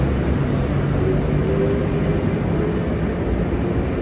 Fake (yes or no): no